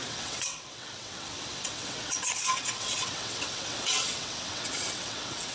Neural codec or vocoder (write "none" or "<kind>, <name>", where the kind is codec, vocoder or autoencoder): vocoder, WaveNeXt